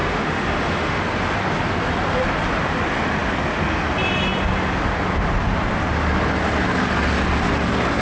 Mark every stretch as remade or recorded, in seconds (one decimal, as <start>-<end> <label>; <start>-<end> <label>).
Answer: 0.0-1.0 remade; 1.0-8.0 recorded